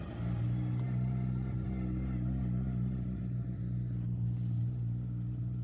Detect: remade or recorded recorded